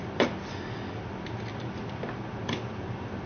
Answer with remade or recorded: recorded